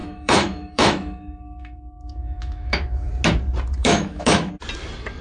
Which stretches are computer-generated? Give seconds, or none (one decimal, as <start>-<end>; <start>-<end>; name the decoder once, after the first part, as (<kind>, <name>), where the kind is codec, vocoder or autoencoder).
0.0-3.1 (autoencoder, DAC-VAE); 3.8-4.5